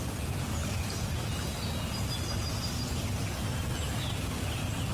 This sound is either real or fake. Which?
real